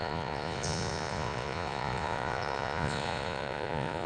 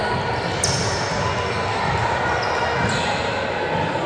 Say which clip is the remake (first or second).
first